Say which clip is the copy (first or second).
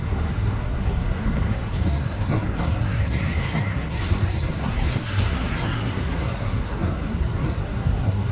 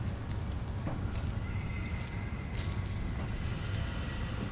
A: first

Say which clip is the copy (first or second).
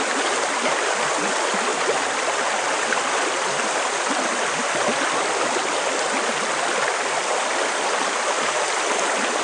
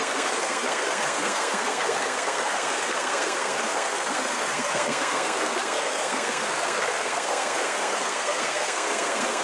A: second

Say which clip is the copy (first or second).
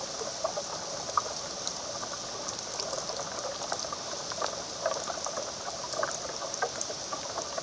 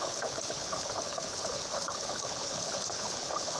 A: second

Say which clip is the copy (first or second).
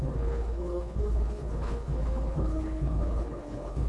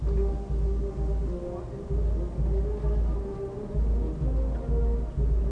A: first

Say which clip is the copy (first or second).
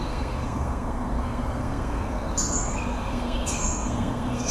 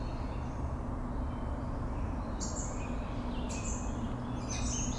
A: first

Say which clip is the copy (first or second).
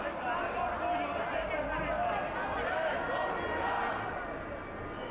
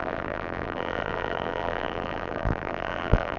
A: second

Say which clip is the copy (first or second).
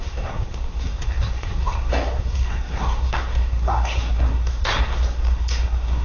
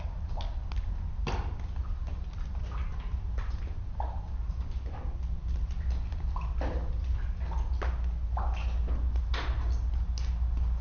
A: first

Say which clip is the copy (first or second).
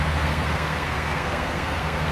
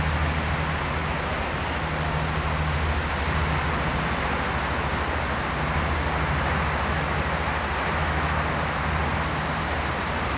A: first